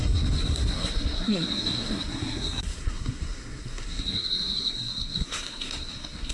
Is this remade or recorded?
remade